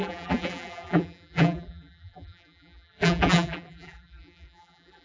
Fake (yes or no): yes